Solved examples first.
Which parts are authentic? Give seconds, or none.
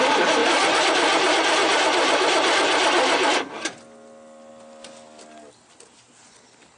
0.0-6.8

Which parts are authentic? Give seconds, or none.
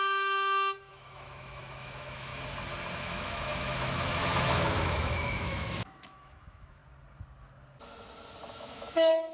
2.3-3.0; 6.8-8.5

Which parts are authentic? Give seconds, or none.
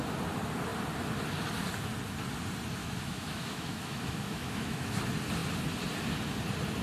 0.0-2.8; 5.0-6.8